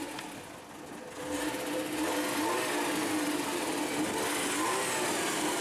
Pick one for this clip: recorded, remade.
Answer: recorded